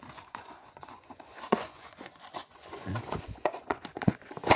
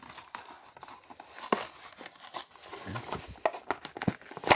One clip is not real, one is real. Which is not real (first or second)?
first